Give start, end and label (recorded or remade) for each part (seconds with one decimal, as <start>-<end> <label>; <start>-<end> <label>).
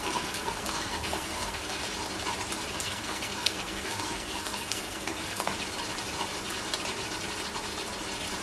0.0-1.8 remade; 1.8-2.7 recorded; 2.7-5.5 remade; 5.5-8.4 recorded